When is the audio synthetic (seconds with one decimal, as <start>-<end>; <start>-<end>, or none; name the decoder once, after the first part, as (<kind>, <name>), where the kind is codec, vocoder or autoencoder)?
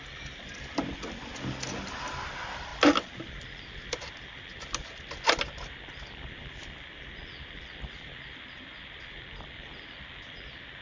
none